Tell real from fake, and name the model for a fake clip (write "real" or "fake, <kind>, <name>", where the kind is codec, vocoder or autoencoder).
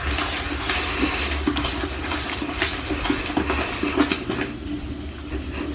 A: real